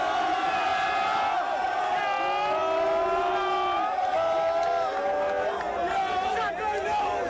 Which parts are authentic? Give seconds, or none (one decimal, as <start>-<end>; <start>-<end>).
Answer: 0.0-7.3